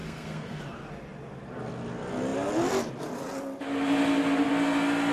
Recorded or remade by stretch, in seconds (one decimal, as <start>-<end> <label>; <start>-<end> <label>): 0.0-0.6 remade; 0.6-5.1 recorded

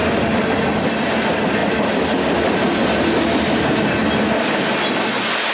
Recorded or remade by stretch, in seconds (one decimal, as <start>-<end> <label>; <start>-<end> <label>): 0.0-5.5 recorded

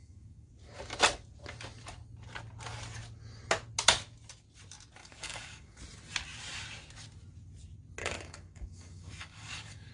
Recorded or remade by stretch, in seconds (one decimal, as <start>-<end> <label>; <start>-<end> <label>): 0.0-0.5 remade; 0.5-5.0 recorded; 5.0-5.8 remade; 5.8-8.0 recorded; 8.0-9.9 remade

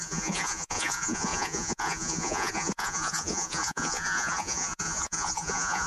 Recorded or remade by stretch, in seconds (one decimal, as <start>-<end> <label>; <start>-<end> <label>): 0.0-5.9 remade

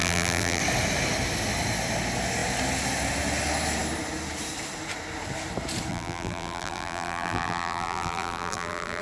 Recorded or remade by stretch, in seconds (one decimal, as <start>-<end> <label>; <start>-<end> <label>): 0.0-0.6 remade; 0.6-5.9 recorded; 5.9-9.0 remade

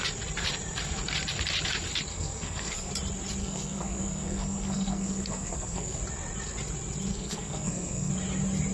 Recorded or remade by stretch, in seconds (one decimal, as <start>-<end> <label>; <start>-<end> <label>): 0.0-2.1 recorded; 2.1-2.9 remade; 2.9-3.4 recorded; 3.4-6.0 remade; 6.0-7.1 recorded; 7.1-8.1 remade; 8.1-8.7 recorded

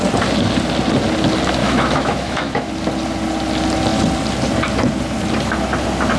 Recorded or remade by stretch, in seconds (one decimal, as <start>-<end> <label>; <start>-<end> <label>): 0.0-1.6 recorded; 1.6-2.7 remade; 2.7-6.2 recorded

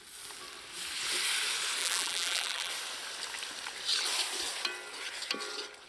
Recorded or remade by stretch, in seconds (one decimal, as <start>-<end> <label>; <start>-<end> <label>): 0.0-1.8 recorded; 1.8-2.7 remade; 2.7-5.9 recorded